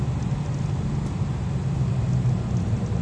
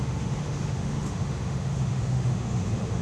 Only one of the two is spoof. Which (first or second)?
second